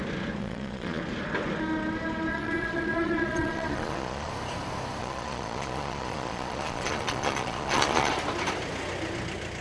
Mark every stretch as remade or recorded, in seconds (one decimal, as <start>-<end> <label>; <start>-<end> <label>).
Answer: 0.0-0.4 recorded; 0.4-1.0 remade; 1.0-2.3 recorded; 2.3-4.3 remade; 4.3-5.0 recorded; 5.0-8.1 remade; 8.1-9.6 recorded